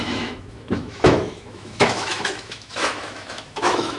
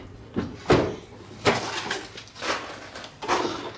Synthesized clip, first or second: first